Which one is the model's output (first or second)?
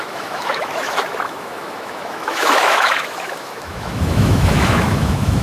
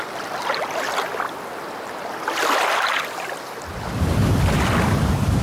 first